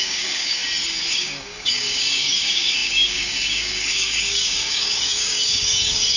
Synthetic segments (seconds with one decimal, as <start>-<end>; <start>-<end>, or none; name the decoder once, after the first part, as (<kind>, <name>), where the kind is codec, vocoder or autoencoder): 0.0-0.6 (codec, DAC); 1.1-6.2